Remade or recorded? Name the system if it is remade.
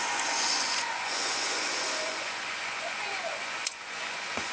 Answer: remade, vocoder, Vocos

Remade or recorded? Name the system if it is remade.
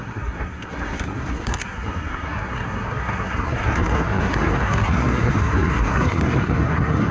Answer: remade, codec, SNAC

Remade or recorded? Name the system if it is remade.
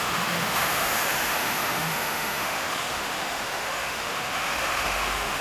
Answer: remade, autoencoder, DAC-VAE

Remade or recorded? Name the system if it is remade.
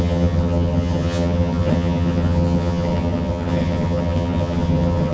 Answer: remade, vocoder, HiFi-GAN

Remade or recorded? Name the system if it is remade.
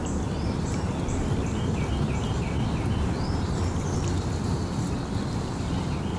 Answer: recorded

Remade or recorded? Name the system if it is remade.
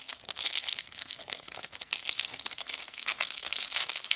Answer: remade, codec, SNAC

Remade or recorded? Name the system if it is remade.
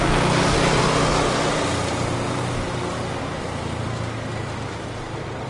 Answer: recorded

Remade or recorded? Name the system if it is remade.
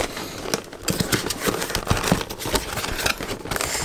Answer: recorded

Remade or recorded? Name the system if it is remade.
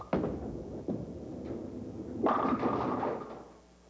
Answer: recorded